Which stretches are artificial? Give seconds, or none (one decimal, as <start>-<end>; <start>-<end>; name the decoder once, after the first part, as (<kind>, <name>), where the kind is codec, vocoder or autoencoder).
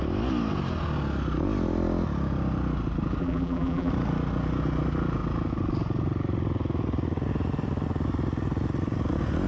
3.2-3.9 (vocoder, BigVGAN v2)